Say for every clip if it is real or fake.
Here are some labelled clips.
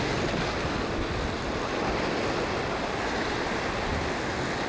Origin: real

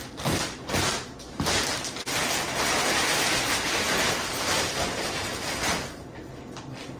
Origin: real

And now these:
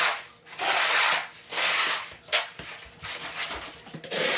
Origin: real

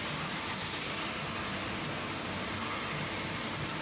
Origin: real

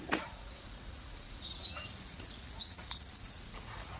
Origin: fake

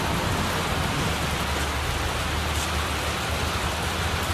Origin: real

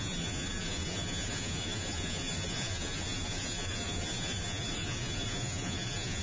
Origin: fake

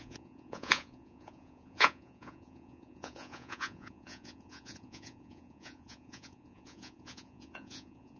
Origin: fake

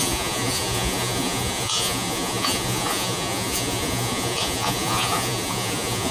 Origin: fake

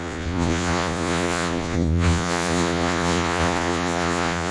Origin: fake